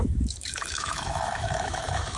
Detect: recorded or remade remade